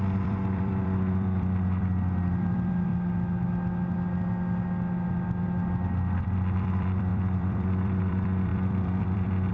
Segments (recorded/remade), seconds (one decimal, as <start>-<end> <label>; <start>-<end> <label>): 0.0-2.9 remade; 2.9-6.2 recorded; 6.2-9.5 remade